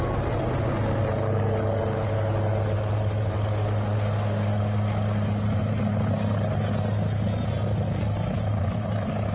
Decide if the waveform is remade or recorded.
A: recorded